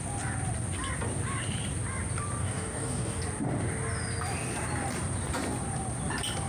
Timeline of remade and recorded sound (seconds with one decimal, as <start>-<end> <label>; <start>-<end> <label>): 0.0-2.4 recorded; 2.4-3.2 remade; 3.2-6.5 recorded